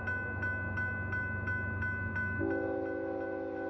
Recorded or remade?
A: recorded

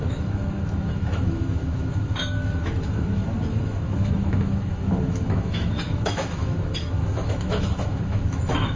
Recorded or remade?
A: remade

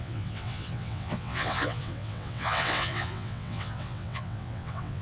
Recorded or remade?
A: remade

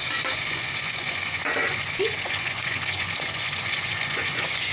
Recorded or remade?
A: remade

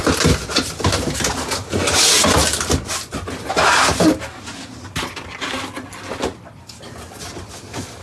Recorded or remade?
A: recorded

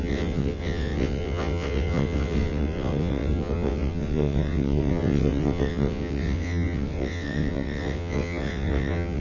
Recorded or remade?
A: remade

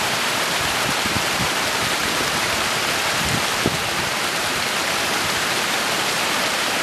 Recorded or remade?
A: remade